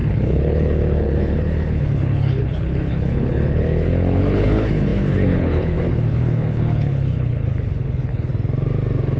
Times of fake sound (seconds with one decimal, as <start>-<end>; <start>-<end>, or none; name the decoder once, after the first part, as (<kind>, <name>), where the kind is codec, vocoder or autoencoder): 0.0-8.3 (codec, HILCodec)